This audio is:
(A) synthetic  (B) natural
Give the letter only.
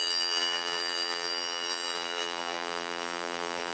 A